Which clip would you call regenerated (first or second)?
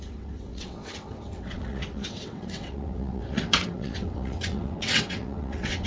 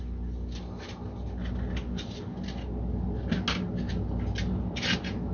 first